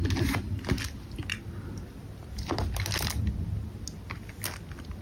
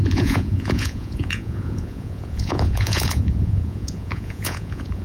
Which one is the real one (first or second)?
first